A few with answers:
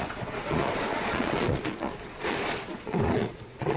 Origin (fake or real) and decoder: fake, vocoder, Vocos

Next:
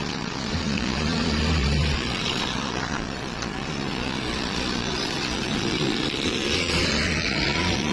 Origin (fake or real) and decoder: fake, vocoder, Vocos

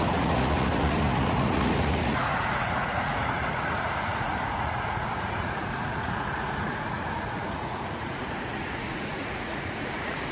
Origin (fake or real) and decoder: fake, vocoder, Vocos